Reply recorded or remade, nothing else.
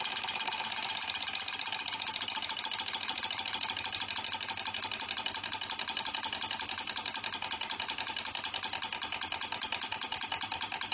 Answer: recorded